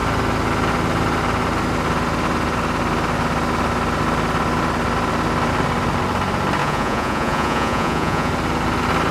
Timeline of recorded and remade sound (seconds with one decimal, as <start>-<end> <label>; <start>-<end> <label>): 0.0-6.6 recorded; 6.6-8.3 remade; 8.3-9.1 recorded